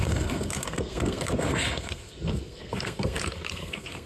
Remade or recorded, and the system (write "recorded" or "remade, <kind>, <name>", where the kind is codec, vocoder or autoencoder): remade, codec, SNAC